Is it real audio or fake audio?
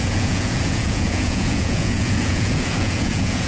fake